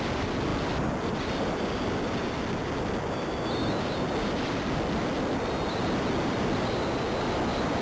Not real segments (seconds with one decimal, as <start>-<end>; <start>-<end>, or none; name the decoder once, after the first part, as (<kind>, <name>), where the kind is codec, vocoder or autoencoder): none